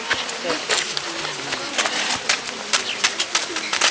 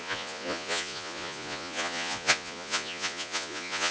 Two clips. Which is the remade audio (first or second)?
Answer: second